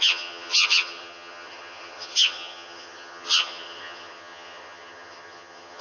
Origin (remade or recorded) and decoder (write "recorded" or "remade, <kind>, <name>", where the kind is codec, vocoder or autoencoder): remade, vocoder, HiFi-GAN